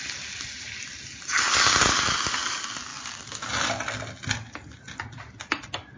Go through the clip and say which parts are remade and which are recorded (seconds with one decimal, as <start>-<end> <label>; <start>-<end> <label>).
0.0-6.0 recorded